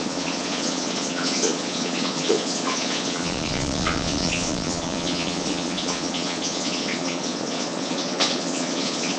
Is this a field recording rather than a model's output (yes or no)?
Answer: no